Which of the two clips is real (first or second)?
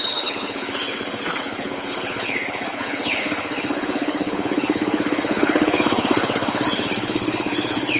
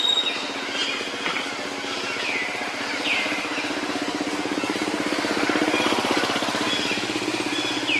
second